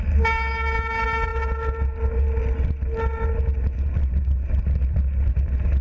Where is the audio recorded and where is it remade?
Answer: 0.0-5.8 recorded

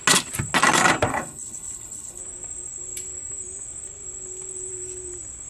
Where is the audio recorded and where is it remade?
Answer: 0.0-1.1 recorded; 1.1-2.2 remade; 2.2-5.5 recorded

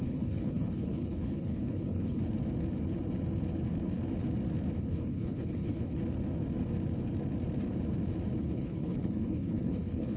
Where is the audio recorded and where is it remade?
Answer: 0.0-2.2 remade; 2.2-4.8 recorded; 4.8-6.0 remade; 6.0-8.4 recorded; 8.4-10.2 remade

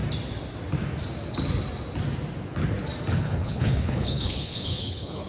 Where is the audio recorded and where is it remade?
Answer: 0.0-3.2 recorded; 3.2-5.3 remade

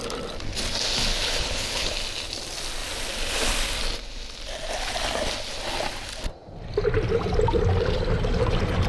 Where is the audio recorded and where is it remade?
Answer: 0.0-1.1 recorded; 1.1-1.9 remade; 1.9-8.9 recorded

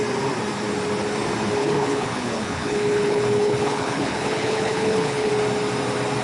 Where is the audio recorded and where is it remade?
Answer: 0.0-1.6 recorded; 1.6-5.3 remade; 5.3-6.2 recorded

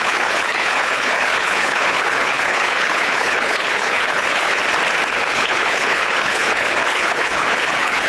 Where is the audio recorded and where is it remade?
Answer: 0.0-4.6 remade; 4.6-5.1 recorded; 5.1-8.1 remade

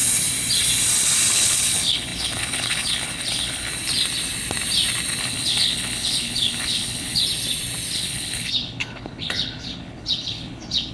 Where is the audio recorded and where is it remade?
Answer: 0.0-1.3 recorded; 1.3-3.7 remade; 3.7-5.2 recorded; 5.2-7.2 remade; 7.2-7.9 recorded; 7.9-10.9 remade